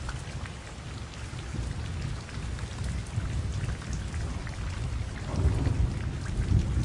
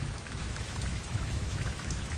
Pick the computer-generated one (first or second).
second